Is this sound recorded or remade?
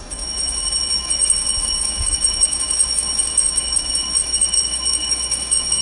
remade